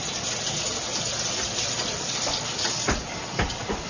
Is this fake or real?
fake